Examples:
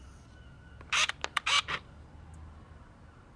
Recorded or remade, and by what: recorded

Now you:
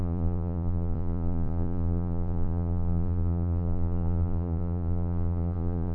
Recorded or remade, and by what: remade, vocoder, Vocos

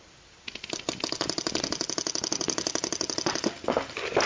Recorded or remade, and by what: recorded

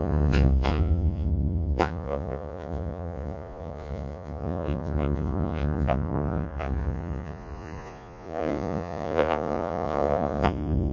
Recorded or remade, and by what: remade, vocoder, Vocos